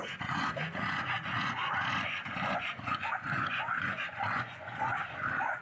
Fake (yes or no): yes